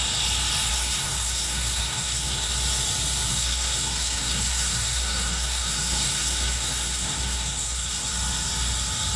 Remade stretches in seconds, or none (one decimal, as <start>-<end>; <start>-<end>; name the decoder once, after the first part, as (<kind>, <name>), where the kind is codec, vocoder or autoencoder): 0.7-2.5 (codec, SNAC); 3.3-8.1